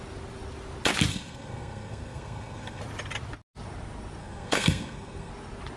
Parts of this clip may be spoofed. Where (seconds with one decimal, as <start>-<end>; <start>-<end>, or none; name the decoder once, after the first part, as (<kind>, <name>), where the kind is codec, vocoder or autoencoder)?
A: 1.1-2.8 (codec, SNAC); 4.2-5.3